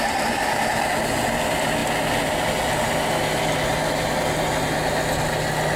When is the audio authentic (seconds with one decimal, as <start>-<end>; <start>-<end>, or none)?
0.0-5.8